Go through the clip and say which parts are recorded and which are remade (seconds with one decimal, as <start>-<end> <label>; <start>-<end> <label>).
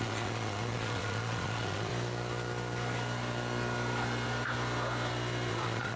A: 0.0-1.9 remade; 1.9-5.5 recorded; 5.5-6.0 remade